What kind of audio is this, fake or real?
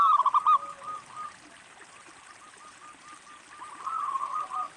real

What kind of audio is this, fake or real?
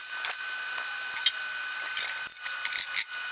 real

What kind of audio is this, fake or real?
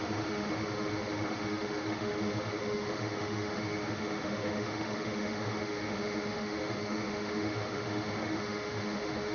fake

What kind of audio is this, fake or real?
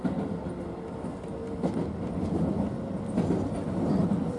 real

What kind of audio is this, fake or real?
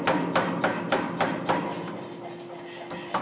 real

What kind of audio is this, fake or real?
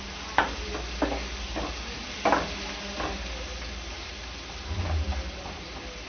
real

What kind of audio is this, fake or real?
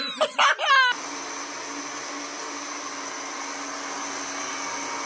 real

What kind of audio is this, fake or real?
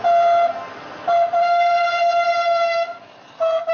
real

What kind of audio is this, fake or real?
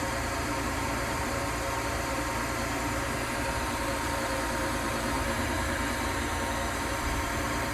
fake